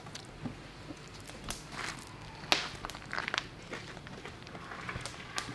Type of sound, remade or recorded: recorded